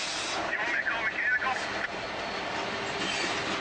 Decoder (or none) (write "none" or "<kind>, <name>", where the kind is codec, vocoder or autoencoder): none